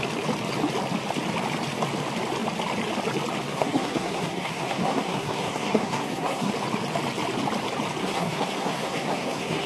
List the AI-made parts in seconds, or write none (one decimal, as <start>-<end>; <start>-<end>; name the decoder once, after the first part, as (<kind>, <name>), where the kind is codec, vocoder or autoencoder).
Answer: 3.5-6.5 (codec, SNAC); 8.0-9.7